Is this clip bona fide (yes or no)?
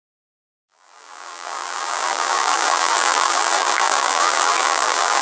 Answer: no